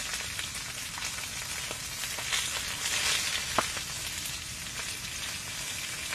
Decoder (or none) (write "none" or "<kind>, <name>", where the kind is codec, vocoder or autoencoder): none